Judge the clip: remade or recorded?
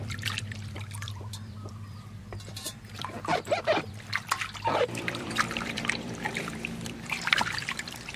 remade